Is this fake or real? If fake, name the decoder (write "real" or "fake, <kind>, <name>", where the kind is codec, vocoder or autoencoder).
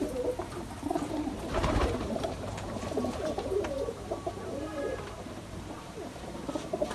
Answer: fake, vocoder, BigVGAN v2